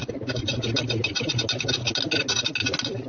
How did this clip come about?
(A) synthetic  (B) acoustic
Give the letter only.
B